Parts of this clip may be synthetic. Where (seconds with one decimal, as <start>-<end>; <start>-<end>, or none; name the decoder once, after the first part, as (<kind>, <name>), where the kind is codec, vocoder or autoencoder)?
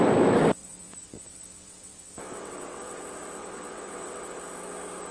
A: 0.6-3.0 (vocoder, WaveNeXt); 3.4-4.4